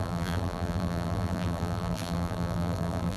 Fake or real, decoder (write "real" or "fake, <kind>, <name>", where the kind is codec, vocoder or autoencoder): fake, vocoder, BigVGAN v2